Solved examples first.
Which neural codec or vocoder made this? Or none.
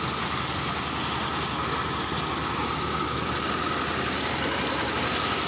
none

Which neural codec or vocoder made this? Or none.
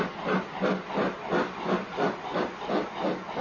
none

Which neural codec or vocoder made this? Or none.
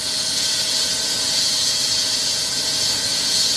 vocoder, Vocos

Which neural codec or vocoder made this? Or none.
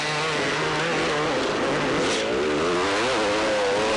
none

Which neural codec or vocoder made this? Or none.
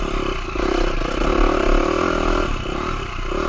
none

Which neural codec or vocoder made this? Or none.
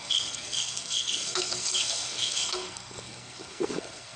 codec, SNAC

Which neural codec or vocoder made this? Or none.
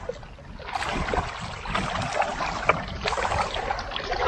none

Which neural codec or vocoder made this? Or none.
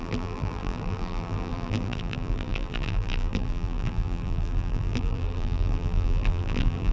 vocoder, BigVGAN v2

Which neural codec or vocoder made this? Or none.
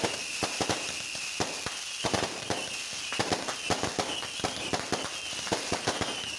none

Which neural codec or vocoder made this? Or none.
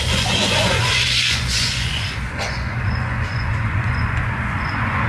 vocoder, Vocos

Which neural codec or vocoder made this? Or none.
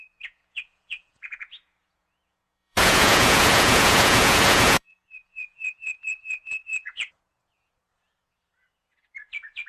vocoder, Vocos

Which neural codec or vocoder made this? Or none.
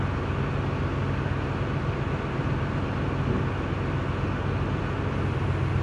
none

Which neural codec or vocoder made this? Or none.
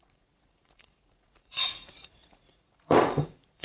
vocoder, Vocos